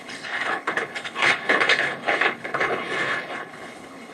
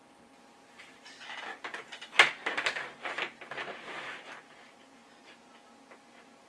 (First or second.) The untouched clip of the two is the second